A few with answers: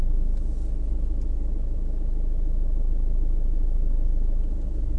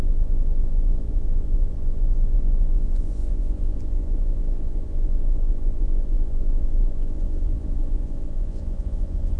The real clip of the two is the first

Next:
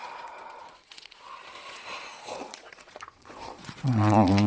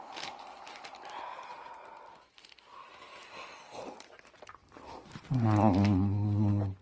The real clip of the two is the second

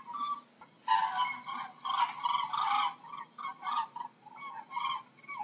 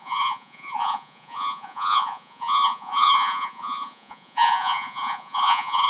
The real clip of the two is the first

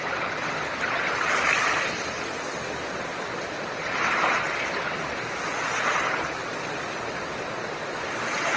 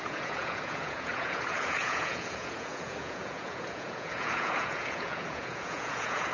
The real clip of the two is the first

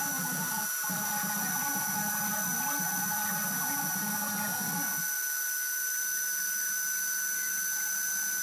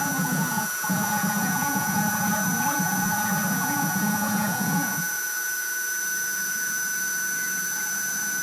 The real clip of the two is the first